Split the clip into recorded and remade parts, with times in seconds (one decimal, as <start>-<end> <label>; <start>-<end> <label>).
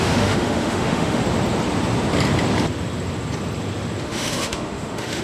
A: 0.0-1.2 remade; 1.2-4.0 recorded; 4.0-5.2 remade